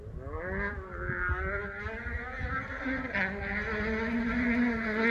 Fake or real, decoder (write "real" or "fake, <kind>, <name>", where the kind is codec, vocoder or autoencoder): real